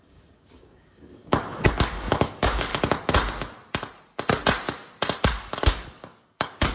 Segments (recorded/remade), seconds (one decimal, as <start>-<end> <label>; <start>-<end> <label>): 0.0-2.7 remade; 2.7-5.2 recorded; 5.2-6.7 remade